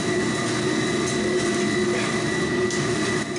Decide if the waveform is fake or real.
real